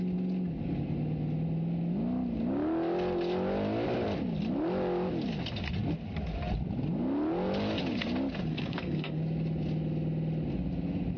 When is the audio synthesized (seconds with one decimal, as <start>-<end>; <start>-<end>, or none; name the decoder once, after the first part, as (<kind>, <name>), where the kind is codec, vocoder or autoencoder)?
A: 8.5-9.2 (codec, SNAC)